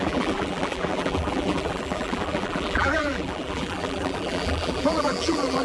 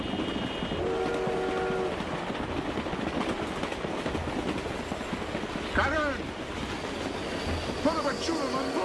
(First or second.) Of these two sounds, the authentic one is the second